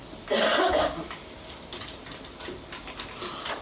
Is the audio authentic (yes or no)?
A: yes